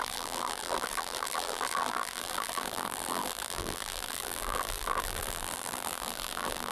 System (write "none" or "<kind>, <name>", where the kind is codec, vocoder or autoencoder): vocoder, BigVGAN v2